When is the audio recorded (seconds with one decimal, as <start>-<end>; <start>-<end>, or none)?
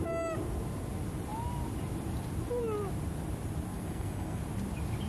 0.0-3.7; 4.4-5.1